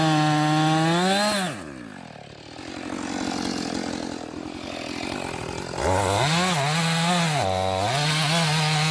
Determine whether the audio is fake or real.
real